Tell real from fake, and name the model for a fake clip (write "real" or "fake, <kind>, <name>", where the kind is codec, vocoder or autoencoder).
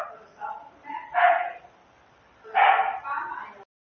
real